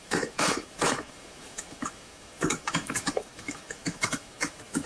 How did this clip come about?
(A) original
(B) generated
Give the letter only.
B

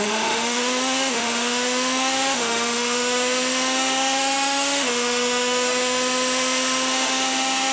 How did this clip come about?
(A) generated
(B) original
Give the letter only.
A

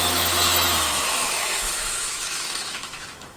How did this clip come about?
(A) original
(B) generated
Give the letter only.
B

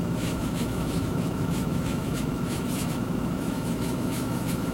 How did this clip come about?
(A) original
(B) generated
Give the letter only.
B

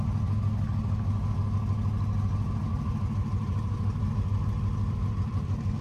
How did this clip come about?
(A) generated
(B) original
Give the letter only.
B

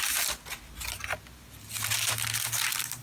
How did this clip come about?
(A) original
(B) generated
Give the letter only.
A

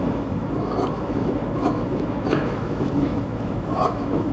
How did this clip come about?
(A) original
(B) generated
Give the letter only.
B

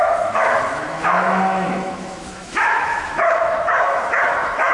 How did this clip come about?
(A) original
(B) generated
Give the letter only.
B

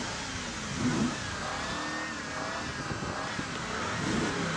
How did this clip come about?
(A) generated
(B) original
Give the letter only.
B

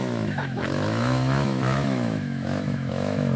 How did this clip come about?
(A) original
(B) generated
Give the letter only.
B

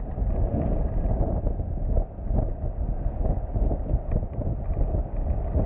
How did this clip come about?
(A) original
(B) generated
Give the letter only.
A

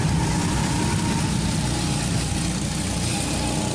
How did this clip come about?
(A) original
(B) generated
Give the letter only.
A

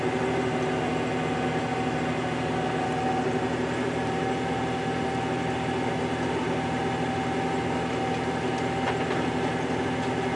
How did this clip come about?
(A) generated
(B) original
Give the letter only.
B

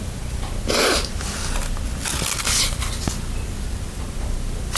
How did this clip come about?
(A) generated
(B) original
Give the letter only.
B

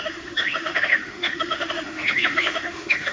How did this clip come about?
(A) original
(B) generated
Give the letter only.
B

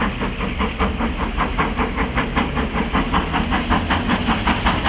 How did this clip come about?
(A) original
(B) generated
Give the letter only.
A